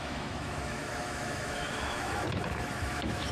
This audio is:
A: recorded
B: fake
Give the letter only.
B